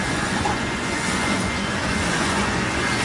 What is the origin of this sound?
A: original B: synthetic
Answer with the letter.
B